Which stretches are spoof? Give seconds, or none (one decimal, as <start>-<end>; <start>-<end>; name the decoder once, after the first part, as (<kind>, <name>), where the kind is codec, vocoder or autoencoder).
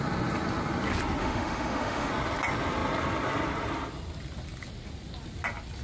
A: 1.2-2.1 (autoencoder, DAC-VAE)